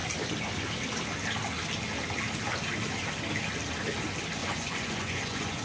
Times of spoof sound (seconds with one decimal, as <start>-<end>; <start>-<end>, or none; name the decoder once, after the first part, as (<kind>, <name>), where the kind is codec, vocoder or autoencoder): 4.4-5.6 (vocoder, Vocos)